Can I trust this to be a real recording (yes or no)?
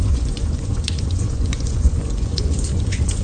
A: no